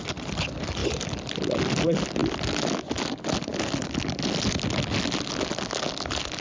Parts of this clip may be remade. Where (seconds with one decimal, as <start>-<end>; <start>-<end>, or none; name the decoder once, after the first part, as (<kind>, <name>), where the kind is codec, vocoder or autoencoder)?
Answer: none